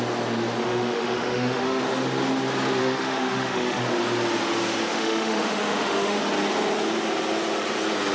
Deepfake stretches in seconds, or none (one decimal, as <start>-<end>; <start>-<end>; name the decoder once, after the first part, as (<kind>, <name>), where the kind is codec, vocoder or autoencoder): 0.6-1.8 (autoencoder, DAC-VAE); 2.8-3.8; 4.9-6.2